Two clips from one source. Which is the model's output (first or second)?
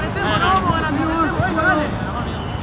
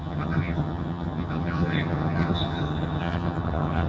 second